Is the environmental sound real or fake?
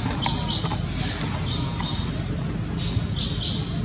real